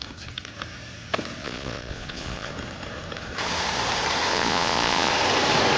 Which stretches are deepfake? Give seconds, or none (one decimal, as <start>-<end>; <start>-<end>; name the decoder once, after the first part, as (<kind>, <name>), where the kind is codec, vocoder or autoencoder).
1.4-2.5 (vocoder, Vocos); 4.3-5.1